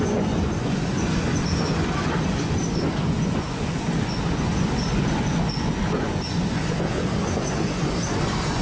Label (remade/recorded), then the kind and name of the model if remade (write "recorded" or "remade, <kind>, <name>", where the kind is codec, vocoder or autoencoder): remade, vocoder, Vocos